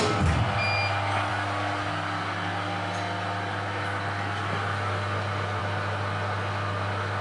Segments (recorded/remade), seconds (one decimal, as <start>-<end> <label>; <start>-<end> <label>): 0.0-7.2 recorded